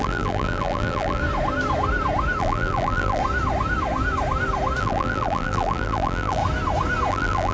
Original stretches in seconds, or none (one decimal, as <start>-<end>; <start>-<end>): 1.2-2.4; 3.2-4.8; 6.4-7.1